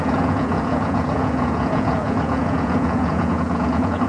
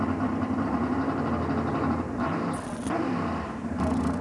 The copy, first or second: first